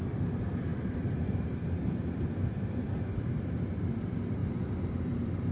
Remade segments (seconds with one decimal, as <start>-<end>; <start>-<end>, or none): 0.0-4.4; 4.9-5.5